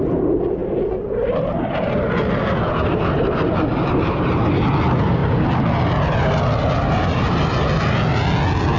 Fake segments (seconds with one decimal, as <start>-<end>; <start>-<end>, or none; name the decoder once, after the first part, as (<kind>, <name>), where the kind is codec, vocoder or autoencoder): none